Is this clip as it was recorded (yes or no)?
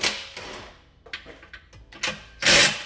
yes